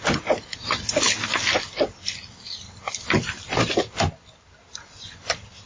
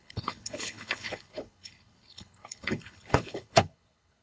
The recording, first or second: first